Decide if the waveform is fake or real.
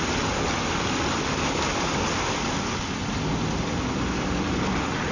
real